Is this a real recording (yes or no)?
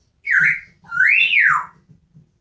yes